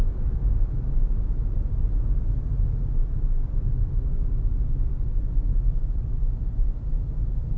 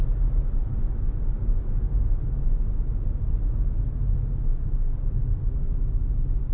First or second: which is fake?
first